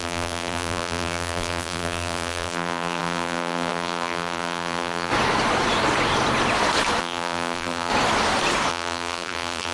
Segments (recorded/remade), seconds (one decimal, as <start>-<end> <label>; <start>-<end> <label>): 0.0-5.1 remade; 5.1-7.0 recorded; 7.0-7.9 remade; 7.9-8.7 recorded; 8.7-9.7 remade